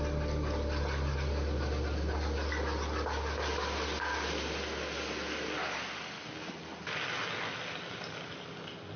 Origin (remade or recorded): recorded